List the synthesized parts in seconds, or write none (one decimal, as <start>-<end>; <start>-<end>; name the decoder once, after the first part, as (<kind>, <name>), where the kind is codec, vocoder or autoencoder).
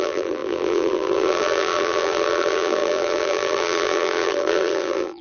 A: 0.0-5.2 (vocoder, BigVGAN v2)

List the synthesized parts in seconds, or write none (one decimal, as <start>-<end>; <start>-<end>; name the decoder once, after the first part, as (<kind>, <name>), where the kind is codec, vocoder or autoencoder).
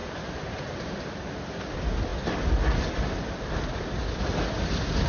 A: 0.0-1.0 (vocoder, BigVGAN v2)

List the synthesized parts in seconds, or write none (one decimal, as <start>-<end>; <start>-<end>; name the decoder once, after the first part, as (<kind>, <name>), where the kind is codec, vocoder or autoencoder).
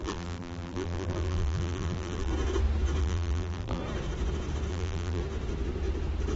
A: 0.0-2.3 (vocoder, BigVGAN v2); 3.0-3.8; 4.7-5.2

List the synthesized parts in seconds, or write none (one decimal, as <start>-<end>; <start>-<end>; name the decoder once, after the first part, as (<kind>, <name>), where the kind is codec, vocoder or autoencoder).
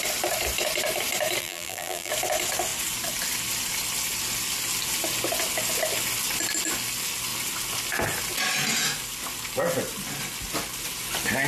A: 1.4-2.1 (vocoder, BigVGAN v2)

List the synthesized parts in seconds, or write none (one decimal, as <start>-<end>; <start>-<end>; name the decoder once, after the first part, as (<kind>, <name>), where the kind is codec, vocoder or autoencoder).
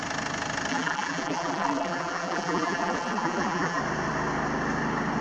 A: 0.7-3.8 (vocoder, BigVGAN v2)